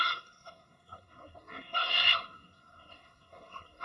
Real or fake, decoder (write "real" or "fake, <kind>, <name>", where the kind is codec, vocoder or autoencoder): fake, codec, SNAC